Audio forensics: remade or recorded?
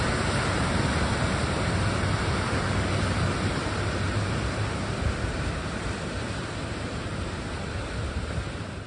remade